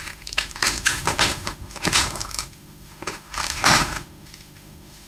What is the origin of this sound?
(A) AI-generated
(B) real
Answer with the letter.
A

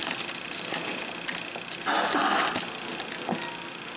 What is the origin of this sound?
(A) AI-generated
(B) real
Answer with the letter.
B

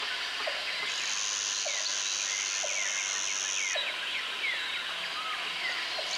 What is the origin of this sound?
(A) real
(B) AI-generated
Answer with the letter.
A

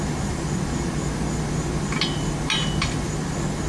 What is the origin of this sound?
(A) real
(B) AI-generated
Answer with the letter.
A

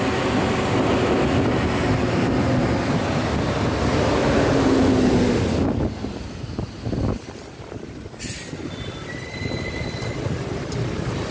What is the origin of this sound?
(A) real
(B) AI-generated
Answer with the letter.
A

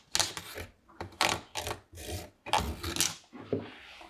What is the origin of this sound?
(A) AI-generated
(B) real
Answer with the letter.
B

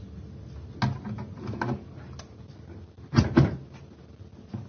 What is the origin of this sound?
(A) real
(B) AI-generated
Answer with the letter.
A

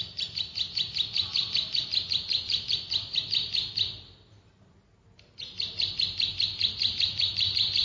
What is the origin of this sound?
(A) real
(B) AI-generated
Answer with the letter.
A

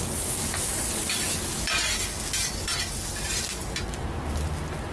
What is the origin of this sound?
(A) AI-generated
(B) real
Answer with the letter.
B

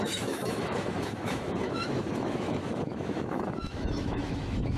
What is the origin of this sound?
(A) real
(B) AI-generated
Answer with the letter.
B